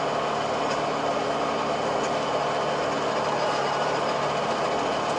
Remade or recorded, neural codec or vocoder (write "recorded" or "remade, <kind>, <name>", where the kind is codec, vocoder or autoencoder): recorded